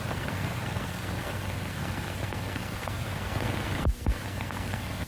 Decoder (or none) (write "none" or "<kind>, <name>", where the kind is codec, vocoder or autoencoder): codec, SNAC